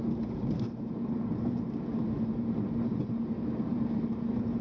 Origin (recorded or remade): remade